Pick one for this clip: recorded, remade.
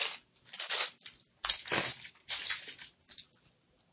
recorded